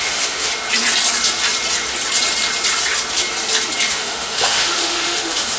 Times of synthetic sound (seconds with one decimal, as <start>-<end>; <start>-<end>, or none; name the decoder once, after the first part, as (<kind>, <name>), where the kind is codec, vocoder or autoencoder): 0.0-0.5 (autoencoder, DAC-VAE); 3.9-5.6